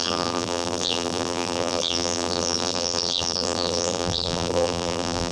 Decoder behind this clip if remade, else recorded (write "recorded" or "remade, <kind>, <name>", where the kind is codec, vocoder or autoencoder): remade, vocoder, BigVGAN v2